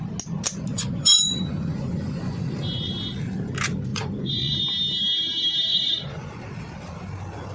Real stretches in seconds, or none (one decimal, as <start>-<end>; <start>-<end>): 0.0-0.7; 2.9-3.9; 4.6-5.7; 6.3-7.5

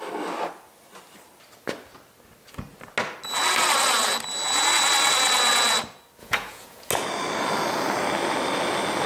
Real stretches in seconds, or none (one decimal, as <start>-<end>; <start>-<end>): 0.0-6.2; 6.9-9.1

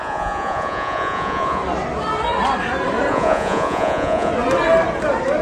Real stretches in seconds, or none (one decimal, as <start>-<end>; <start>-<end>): 1.6-3.1; 4.3-5.4